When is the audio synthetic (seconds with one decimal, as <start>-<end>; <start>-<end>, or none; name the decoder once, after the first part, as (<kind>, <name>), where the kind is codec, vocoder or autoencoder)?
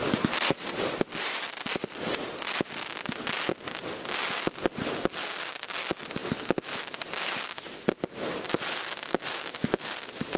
none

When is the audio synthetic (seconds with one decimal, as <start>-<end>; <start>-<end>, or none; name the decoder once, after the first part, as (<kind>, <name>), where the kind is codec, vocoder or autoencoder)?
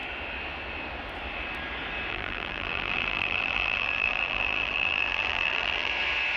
2.1-5.9 (vocoder, BigVGAN v2)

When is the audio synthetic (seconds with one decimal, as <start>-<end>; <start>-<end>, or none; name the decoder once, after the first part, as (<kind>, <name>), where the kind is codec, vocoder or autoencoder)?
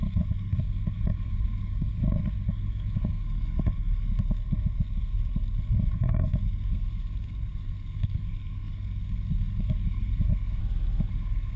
0.0-10.6 (codec, SNAC); 11.1-11.6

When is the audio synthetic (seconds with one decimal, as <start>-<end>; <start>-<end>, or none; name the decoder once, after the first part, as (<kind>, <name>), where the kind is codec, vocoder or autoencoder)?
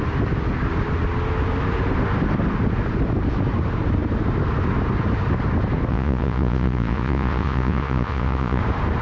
5.9-8.6 (vocoder, Vocos)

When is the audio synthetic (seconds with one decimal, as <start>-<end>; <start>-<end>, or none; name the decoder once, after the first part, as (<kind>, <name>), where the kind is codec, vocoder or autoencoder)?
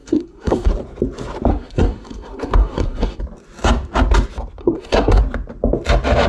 0.0-0.7 (codec, SNAC); 1.5-3.2; 4.6-5.2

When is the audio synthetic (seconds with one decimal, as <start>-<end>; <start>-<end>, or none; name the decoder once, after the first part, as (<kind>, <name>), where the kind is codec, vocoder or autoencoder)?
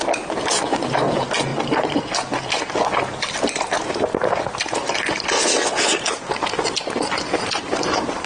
none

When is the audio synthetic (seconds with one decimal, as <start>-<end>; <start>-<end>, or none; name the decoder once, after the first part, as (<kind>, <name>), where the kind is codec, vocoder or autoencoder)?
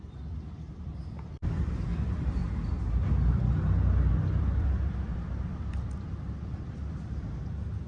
0.0-2.4 (vocoder, BigVGAN v2); 4.1-7.9